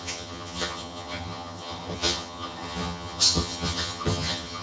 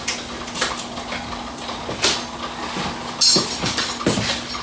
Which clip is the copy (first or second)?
first